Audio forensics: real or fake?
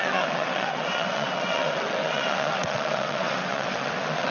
fake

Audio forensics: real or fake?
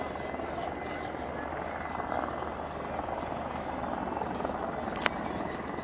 real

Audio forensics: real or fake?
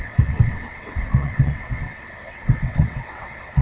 fake